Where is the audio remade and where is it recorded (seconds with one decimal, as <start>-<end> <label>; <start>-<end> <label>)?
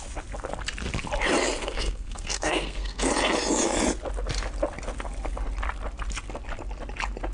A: 0.0-1.6 recorded; 1.6-3.1 remade; 3.1-7.3 recorded